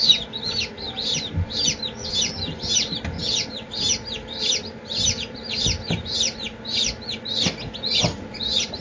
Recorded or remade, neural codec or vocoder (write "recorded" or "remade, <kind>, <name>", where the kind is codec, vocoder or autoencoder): recorded